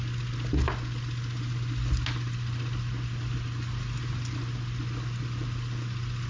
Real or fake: real